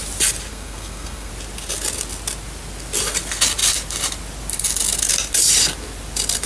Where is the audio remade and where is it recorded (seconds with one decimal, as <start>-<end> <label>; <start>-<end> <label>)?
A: 0.0-0.5 recorded; 0.5-1.3 remade; 1.3-6.5 recorded

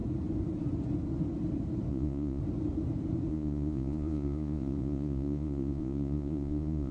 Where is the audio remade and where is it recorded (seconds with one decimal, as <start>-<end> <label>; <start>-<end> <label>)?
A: 0.0-1.9 recorded; 1.9-2.4 remade; 2.4-3.3 recorded; 3.3-6.9 remade

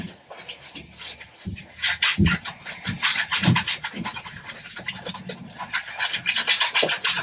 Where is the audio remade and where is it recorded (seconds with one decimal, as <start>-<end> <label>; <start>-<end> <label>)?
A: 0.0-7.2 recorded

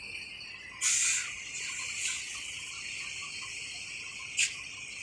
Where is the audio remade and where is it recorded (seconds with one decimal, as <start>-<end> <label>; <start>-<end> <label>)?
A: 0.0-2.0 recorded; 2.0-2.7 remade; 2.7-5.0 recorded

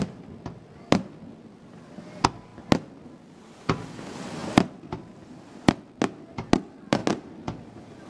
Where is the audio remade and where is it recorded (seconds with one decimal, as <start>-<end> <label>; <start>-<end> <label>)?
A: 0.0-8.1 recorded

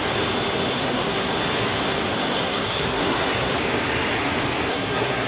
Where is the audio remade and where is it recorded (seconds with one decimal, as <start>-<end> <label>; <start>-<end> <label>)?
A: 0.0-0.7 recorded; 0.7-1.3 remade; 1.3-2.2 recorded; 2.2-3.5 remade; 3.5-4.7 recorded; 4.7-5.3 remade

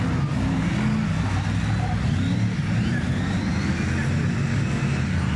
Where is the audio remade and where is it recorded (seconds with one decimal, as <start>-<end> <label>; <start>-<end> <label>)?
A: 0.0-0.7 remade; 0.7-2.3 recorded; 2.3-3.5 remade; 3.5-4.8 recorded; 4.8-5.4 remade

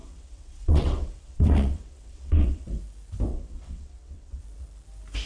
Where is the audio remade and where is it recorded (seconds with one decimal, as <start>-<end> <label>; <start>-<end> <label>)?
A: 0.0-2.8 remade; 2.8-3.3 recorded; 3.3-4.4 remade; 4.4-5.3 recorded